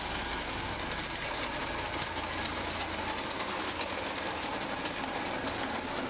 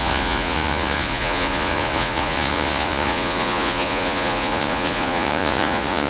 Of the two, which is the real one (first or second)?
first